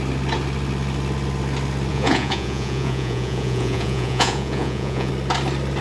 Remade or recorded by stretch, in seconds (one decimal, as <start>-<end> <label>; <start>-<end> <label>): 0.0-1.9 recorded; 1.9-5.1 remade; 5.1-5.8 recorded